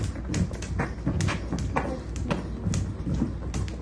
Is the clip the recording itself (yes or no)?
yes